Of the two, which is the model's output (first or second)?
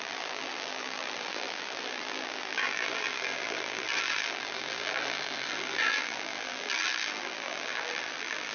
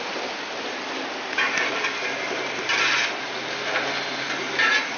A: first